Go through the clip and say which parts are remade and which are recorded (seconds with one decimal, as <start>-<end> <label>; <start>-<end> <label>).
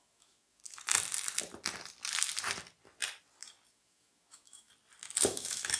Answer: 0.0-0.6 remade; 0.6-3.7 recorded; 3.7-4.7 remade; 4.7-5.2 recorded; 5.2-5.8 remade